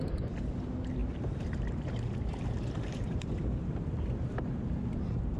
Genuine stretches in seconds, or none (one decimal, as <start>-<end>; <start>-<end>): 0.0-1.0; 3.6-5.4